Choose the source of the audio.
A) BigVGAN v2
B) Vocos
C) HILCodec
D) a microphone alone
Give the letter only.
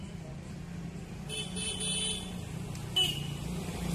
D